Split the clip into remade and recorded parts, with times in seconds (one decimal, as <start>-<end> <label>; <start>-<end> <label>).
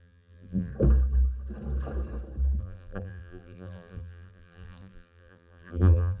0.0-0.7 remade; 0.7-2.6 recorded; 2.6-6.2 remade